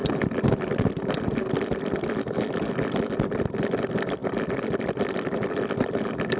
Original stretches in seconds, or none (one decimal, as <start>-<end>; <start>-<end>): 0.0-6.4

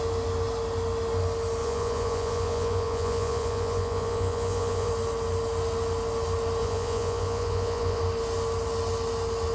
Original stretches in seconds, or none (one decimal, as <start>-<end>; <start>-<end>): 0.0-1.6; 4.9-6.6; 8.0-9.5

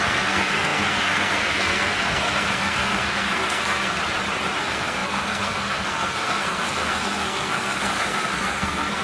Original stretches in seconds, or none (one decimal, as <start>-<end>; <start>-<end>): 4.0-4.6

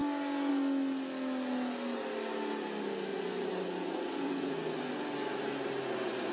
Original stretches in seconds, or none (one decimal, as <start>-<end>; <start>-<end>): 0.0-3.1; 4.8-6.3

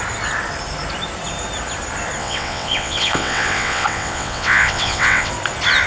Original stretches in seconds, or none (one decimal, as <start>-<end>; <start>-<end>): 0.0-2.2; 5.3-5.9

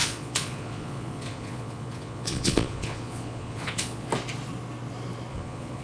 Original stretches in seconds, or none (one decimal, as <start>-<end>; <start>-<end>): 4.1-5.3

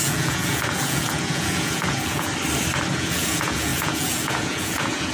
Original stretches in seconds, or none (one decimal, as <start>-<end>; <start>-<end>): 2.3-2.9